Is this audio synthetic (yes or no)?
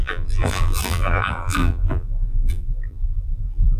yes